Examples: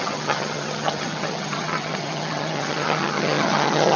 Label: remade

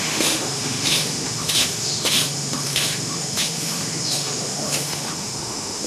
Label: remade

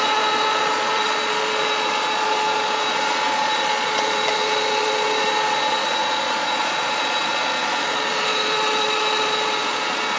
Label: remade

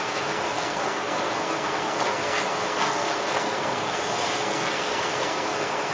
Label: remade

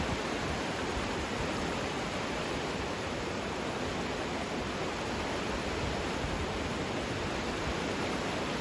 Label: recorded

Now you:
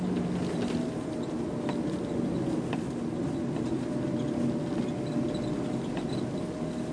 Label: recorded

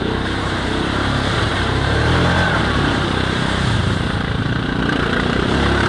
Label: remade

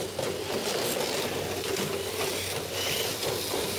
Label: recorded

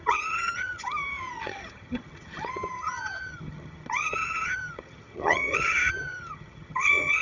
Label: remade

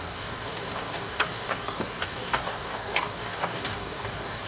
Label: remade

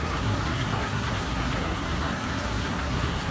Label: remade